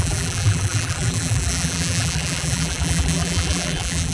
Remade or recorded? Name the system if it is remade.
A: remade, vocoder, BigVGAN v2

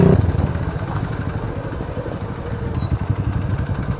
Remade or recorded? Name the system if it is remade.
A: recorded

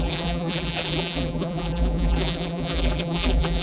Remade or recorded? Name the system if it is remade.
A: remade, vocoder, BigVGAN v2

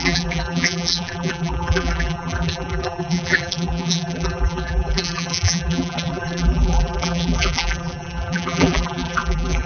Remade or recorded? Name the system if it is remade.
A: remade, vocoder, BigVGAN v2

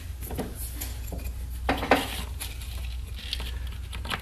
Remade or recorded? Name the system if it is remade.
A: recorded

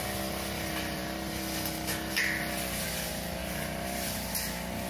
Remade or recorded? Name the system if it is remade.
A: recorded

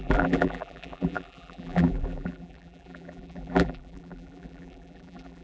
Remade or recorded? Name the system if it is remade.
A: remade, vocoder, BigVGAN v2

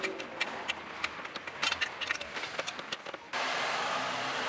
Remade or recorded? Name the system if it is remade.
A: remade, vocoder, BigVGAN v2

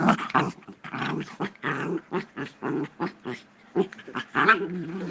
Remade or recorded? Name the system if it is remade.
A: remade, vocoder, BigVGAN v2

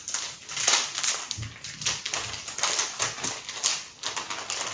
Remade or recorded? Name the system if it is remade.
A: recorded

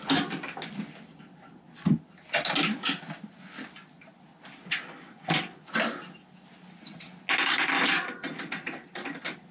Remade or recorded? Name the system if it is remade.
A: recorded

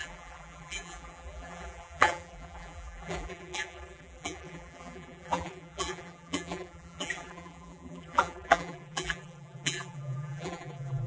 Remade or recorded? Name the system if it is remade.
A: remade, vocoder, BigVGAN v2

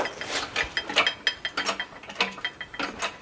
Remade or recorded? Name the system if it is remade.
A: recorded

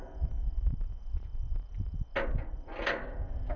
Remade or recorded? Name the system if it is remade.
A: recorded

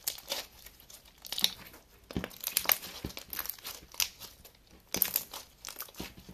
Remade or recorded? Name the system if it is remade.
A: recorded